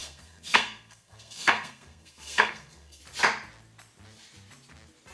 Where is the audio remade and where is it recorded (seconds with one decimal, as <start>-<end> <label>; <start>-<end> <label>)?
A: 0.0-3.0 remade; 3.0-5.1 recorded